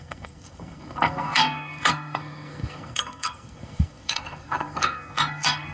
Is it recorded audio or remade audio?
remade